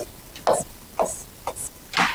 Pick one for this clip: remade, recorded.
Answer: recorded